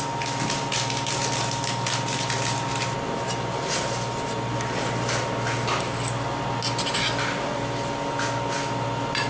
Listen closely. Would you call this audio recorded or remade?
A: recorded